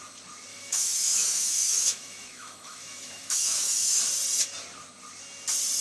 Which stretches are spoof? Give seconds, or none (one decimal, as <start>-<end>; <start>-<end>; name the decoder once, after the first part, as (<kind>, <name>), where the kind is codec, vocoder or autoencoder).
0.5-4.0 (autoencoder, DAC-VAE)